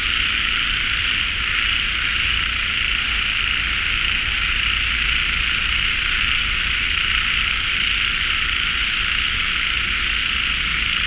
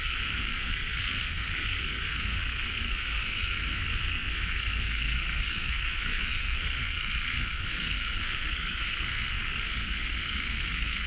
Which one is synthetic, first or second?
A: second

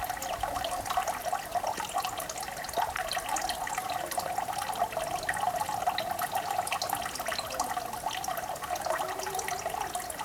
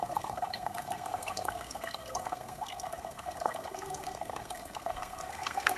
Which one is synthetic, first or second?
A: second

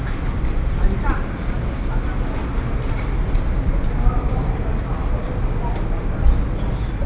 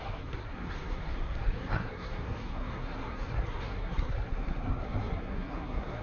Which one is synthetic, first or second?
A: second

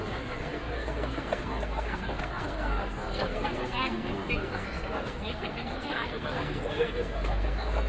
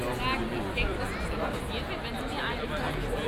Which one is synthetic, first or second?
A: first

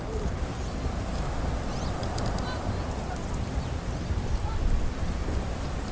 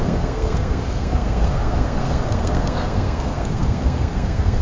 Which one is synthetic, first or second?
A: second